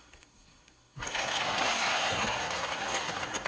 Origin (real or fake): fake